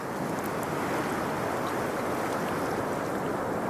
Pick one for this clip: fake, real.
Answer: real